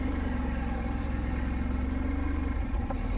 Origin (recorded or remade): remade